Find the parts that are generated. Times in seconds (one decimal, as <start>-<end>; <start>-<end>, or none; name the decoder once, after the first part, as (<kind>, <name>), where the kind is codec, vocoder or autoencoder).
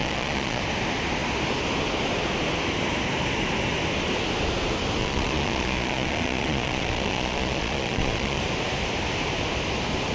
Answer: 0.0-0.6 (vocoder, Vocos); 5.0-8.4